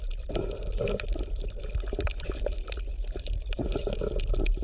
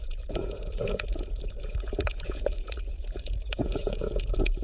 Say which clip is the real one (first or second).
first